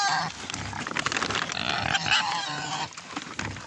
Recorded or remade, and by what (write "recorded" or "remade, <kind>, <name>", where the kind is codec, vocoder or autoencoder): recorded